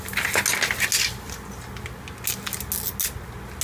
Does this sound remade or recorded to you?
recorded